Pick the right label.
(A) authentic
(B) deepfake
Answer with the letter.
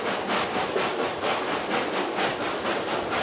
A